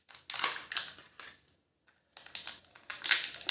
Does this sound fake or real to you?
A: real